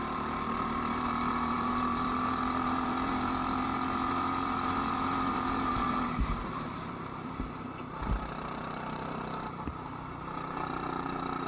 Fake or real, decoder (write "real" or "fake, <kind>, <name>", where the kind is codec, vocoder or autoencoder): fake, vocoder, BigVGAN v2